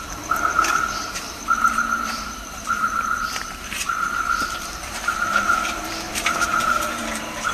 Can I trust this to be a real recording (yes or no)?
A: no